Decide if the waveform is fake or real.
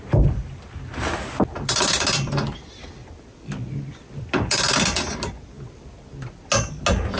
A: real